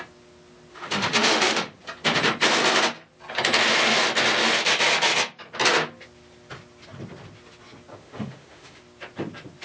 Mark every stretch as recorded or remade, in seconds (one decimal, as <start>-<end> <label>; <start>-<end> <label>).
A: 0.0-0.7 recorded; 0.7-1.8 remade; 1.8-7.9 recorded; 7.9-8.8 remade; 8.8-9.6 recorded